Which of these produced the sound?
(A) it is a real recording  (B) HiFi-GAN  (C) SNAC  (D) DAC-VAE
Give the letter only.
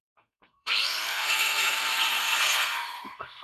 C